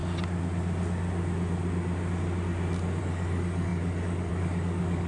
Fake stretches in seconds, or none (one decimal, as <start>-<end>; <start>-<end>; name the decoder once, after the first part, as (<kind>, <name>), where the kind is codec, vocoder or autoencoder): 3.0-5.1 (codec, DAC)